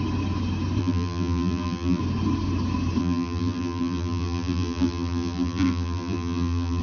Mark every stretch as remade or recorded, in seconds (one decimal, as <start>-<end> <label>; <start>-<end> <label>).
0.0-0.8 recorded; 0.8-2.0 remade; 2.0-3.0 recorded; 3.0-6.8 remade